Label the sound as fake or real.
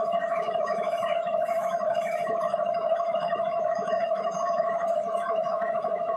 fake